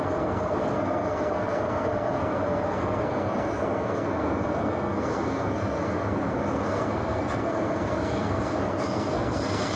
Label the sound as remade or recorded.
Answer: remade